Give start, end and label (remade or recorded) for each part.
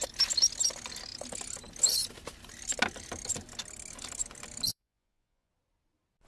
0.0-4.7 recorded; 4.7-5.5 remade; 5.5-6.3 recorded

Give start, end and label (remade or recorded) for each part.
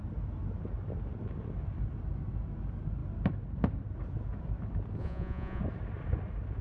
0.0-5.0 recorded; 5.0-5.6 remade; 5.6-6.6 recorded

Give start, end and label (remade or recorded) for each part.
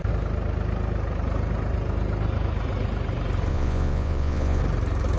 0.0-3.5 recorded; 3.5-4.6 remade; 4.6-5.2 recorded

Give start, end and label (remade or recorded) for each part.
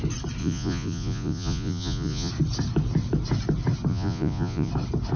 0.0-0.4 recorded; 0.4-2.3 remade; 2.3-3.9 recorded; 3.9-4.7 remade; 4.7-5.2 recorded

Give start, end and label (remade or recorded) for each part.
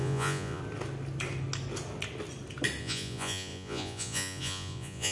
0.0-0.6 remade; 0.6-2.8 recorded; 2.8-5.1 remade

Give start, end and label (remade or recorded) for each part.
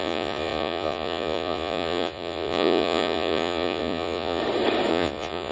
0.0-4.4 remade; 4.4-4.9 recorded; 4.9-5.5 remade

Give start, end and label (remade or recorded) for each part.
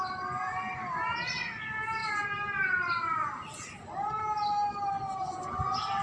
0.0-6.0 recorded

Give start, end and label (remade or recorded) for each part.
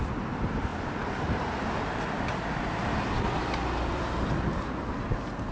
0.0-5.5 recorded